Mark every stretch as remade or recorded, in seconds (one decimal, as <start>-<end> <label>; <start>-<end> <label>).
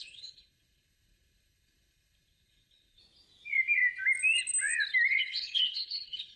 0.0-3.0 remade; 3.0-5.1 recorded; 5.1-6.4 remade